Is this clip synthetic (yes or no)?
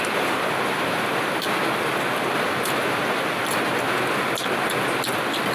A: no